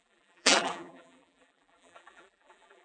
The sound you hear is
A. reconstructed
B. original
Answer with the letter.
A